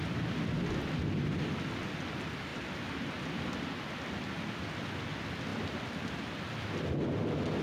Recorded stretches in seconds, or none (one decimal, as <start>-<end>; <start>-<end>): 0.0-2.5; 3.1-7.6